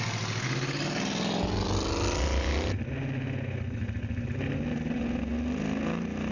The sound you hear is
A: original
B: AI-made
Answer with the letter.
A